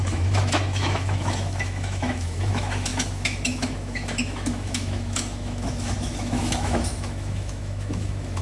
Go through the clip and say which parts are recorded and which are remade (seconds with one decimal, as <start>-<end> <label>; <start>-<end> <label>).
0.0-8.4 remade